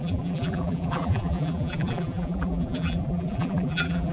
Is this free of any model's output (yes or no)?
no